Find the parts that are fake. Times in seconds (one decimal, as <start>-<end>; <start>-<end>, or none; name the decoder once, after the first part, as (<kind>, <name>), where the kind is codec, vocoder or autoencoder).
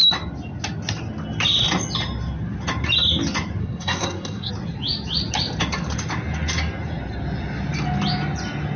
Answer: 3.6-4.5 (codec, SNAC)